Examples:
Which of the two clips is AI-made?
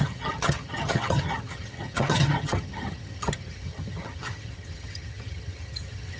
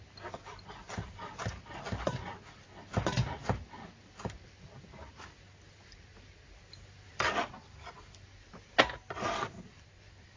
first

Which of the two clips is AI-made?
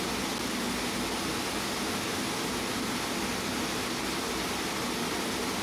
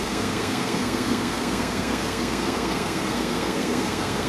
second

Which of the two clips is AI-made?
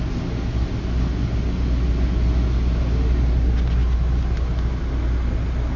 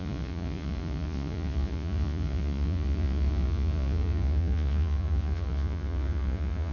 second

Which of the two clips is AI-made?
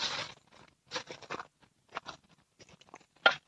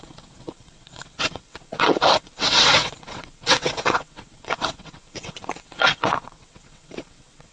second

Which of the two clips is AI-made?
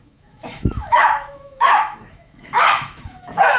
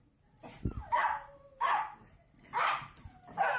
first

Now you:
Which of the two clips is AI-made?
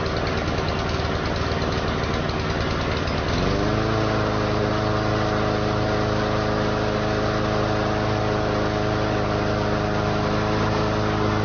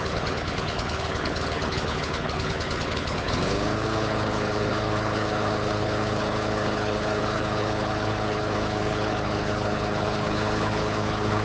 second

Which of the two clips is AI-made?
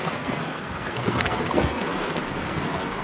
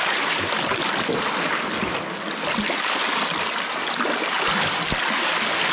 first